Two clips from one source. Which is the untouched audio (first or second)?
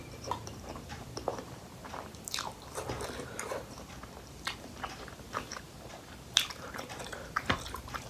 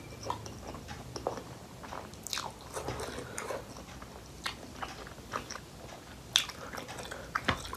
second